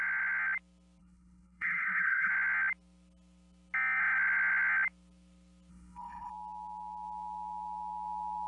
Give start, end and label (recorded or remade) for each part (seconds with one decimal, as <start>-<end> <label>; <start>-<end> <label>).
0.0-1.0 recorded; 1.0-2.3 remade; 2.3-5.7 recorded; 5.7-6.3 remade; 6.3-8.5 recorded